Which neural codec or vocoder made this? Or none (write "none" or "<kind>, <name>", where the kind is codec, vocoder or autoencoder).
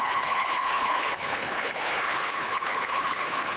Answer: codec, HILCodec